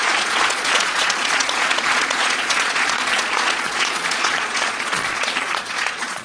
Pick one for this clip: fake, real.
fake